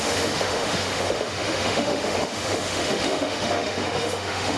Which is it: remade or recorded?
remade